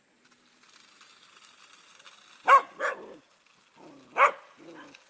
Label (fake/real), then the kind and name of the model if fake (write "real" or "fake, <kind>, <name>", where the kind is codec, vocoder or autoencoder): real